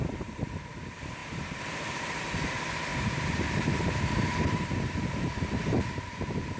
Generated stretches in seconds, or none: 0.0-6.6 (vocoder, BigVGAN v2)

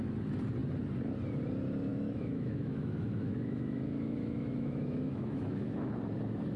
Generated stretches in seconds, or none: 1.9-5.9 (autoencoder, DAC-VAE)

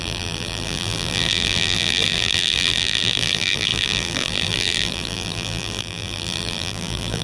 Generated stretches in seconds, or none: 0.0-7.2 (vocoder, BigVGAN v2)

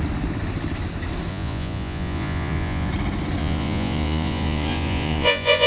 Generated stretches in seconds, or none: 1.3-2.9 (vocoder, Vocos); 3.4-5.7

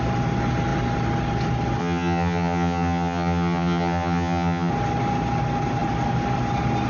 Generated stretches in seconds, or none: 1.8-4.7 (vocoder, HiFi-GAN)